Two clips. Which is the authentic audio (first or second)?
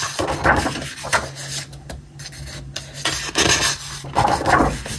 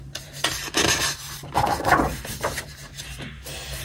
first